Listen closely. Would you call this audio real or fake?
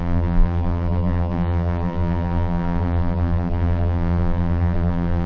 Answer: fake